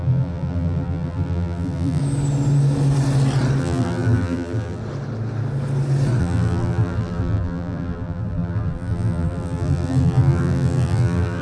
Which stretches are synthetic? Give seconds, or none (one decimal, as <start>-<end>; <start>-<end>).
0.0-2.0; 3.6-4.8; 6.2-11.4